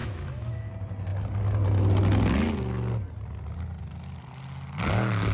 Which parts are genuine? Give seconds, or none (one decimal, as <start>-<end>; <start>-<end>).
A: 0.7-5.3